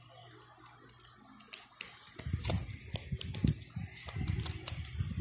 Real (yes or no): yes